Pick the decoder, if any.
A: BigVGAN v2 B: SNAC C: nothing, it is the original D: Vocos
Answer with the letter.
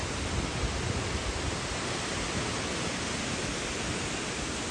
C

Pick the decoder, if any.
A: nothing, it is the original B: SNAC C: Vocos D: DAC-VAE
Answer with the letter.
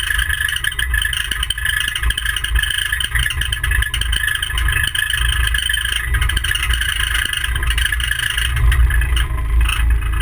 A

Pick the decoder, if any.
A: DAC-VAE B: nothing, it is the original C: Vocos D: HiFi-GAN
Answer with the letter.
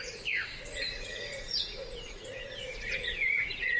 C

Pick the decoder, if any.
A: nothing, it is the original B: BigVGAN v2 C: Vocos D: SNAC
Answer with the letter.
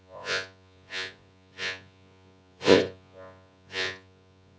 C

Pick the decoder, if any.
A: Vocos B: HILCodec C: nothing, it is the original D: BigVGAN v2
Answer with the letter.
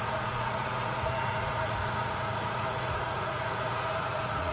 A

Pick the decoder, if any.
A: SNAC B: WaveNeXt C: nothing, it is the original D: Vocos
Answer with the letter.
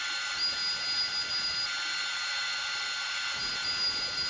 C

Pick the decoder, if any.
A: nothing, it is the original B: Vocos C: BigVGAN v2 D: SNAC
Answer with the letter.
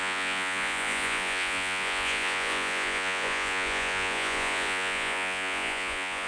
B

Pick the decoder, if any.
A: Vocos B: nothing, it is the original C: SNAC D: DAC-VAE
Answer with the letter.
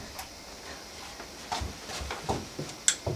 B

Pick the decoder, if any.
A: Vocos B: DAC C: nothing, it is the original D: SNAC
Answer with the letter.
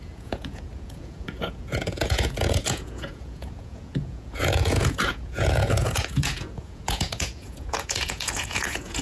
A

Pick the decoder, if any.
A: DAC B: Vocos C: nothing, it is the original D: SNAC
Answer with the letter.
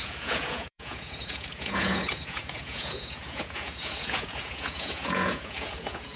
B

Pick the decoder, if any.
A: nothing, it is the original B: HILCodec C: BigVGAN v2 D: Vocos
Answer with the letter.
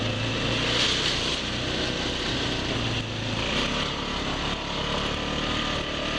A